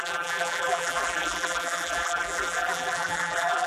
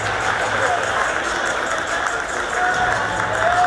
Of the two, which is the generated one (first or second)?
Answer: first